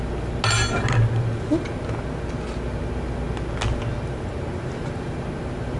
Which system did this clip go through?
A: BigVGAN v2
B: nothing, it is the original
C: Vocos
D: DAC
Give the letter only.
B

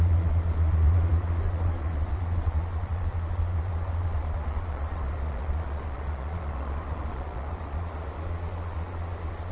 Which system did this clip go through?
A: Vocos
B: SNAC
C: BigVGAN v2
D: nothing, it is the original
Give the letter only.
A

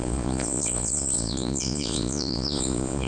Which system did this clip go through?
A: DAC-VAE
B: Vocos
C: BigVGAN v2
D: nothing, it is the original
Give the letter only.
B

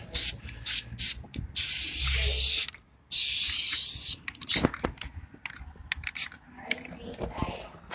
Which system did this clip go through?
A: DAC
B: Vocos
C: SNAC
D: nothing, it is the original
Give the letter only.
D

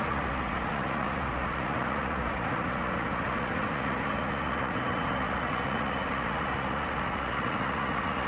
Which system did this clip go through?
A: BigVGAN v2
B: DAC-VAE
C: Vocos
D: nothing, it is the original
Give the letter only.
C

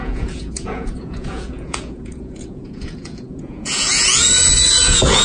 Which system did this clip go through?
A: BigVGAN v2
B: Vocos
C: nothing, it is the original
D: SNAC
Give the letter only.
B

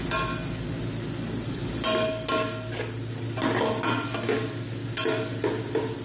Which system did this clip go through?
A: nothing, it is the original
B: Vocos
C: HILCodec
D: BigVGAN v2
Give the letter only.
A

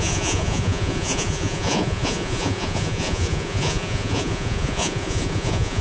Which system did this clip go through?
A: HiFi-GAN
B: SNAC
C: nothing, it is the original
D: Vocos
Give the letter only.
D